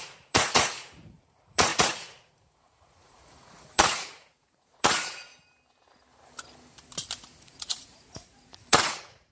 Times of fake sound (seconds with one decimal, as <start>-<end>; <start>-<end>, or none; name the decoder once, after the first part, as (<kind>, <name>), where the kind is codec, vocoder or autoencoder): 0.0-5.3 (vocoder, Vocos); 7.4-9.3